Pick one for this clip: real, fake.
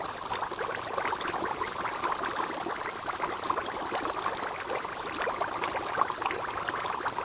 real